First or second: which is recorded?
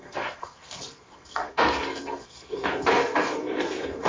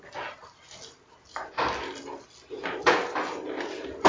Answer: second